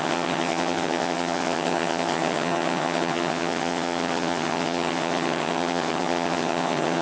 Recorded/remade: remade